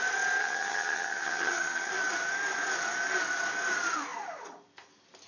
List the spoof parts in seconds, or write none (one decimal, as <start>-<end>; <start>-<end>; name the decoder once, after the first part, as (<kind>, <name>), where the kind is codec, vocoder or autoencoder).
0.4-1.9 (vocoder, HiFi-GAN)